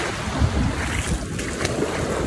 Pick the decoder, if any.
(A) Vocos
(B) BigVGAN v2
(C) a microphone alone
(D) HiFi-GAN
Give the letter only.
C